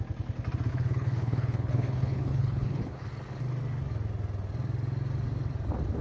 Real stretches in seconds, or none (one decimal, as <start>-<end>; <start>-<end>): 0.0-0.7; 3.1-6.0